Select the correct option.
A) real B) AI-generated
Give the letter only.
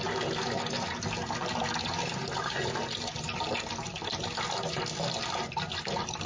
A